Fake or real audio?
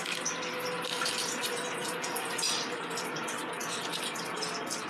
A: real